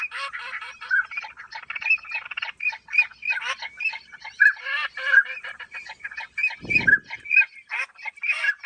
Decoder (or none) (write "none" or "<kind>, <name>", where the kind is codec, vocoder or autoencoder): none